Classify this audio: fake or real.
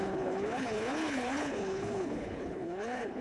fake